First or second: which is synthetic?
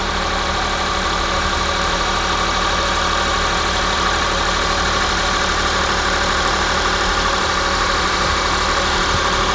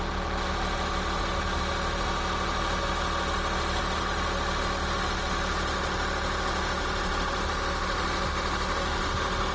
first